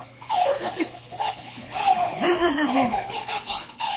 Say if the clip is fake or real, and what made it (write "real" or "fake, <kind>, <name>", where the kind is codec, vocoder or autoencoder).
fake, codec, HILCodec